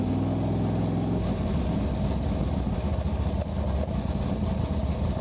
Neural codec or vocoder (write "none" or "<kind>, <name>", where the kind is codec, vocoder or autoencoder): none